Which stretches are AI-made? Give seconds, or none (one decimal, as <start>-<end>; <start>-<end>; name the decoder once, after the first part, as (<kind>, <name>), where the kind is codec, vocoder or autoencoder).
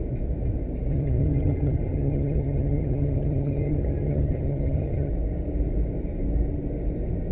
0.9-5.1 (vocoder, HiFi-GAN)